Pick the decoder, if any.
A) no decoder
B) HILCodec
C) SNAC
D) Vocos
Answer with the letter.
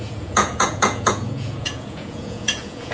D